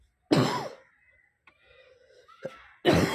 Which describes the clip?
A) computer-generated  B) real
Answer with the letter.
B